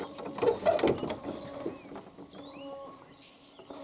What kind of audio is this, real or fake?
real